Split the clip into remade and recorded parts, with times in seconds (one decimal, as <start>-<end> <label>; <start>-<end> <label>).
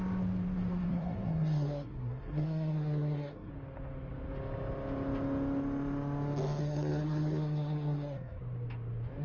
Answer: 0.0-0.7 recorded; 0.7-3.5 remade; 3.5-6.6 recorded; 6.6-8.4 remade; 8.4-9.2 recorded